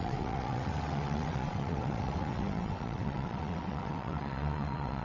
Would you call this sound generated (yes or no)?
yes